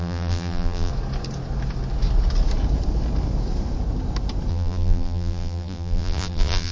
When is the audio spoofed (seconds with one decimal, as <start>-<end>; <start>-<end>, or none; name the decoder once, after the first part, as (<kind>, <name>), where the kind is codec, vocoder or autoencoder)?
0.0-0.9 (vocoder, BigVGAN v2); 4.5-6.7